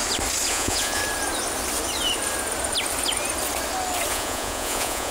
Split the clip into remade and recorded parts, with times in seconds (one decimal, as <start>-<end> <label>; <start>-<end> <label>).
0.0-0.5 recorded; 0.5-1.0 remade; 1.0-4.1 recorded; 4.1-5.1 remade